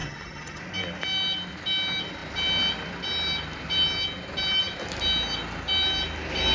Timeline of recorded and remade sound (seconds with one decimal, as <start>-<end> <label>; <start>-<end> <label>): 0.0-0.6 remade; 0.6-6.5 recorded